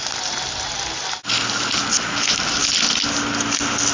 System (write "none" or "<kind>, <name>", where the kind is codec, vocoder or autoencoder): none